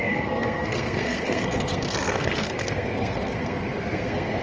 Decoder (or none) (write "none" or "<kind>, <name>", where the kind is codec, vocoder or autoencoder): codec, SNAC